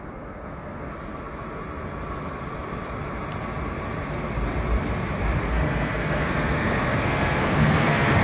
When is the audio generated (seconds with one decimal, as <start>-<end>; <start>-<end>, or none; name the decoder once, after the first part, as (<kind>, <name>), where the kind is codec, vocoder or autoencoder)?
0.0-0.9 (codec, SNAC); 5.4-8.2